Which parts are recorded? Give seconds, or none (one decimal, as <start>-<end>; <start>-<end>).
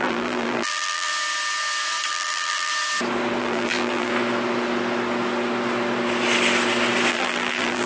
1.1-2.1; 2.7-3.4; 4.1-7.1